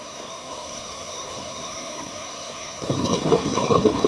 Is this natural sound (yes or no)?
no